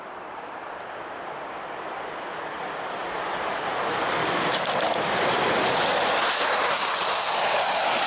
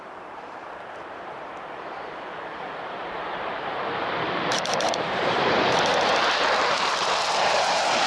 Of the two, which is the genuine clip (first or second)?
first